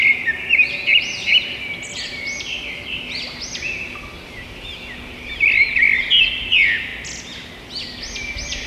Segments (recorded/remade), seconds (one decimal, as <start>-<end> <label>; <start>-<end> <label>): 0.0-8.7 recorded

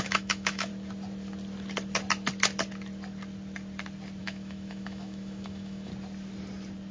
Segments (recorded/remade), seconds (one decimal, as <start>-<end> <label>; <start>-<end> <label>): 0.0-0.7 remade; 0.7-4.2 recorded; 4.2-5.9 remade; 5.9-6.9 recorded

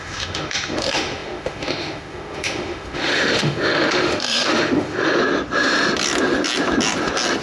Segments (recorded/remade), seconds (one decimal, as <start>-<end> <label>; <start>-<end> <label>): 0.0-5.2 remade; 5.2-7.4 recorded

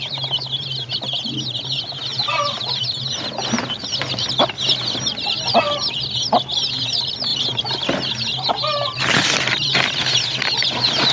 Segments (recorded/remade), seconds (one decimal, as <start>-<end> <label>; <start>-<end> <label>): 0.0-11.1 recorded

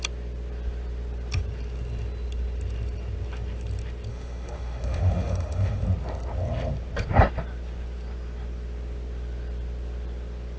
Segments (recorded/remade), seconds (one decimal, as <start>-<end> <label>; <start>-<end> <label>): 0.0-4.1 recorded; 4.1-5.8 remade; 5.8-10.6 recorded

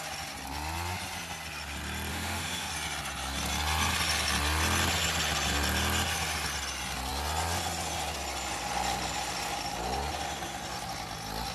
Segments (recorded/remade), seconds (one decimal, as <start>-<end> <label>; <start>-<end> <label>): 0.0-2.1 recorded; 2.1-2.7 remade; 2.7-11.5 recorded

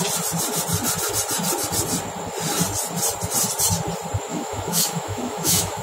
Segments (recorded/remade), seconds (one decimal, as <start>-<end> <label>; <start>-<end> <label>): 0.0-4.3 recorded; 4.3-5.8 remade